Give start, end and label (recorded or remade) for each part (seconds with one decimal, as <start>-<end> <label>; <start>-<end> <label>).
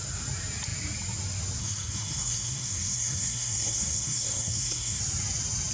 0.0-1.6 recorded; 1.6-5.0 remade; 5.0-5.7 recorded